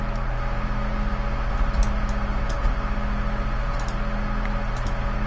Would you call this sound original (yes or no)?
yes